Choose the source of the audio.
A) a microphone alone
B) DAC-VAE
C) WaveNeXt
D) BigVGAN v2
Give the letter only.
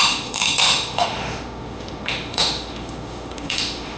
B